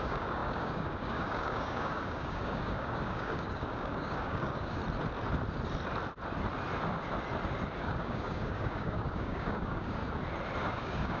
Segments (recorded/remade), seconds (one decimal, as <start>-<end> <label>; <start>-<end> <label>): 0.0-4.8 remade; 4.8-7.8 recorded; 7.8-10.0 remade; 10.0-10.7 recorded; 10.7-11.2 remade